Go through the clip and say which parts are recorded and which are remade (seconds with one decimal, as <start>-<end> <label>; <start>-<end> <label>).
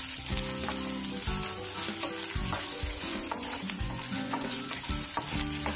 0.0-2.4 recorded; 2.4-4.7 remade; 4.7-5.8 recorded